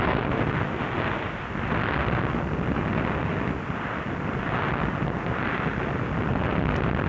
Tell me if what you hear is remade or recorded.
recorded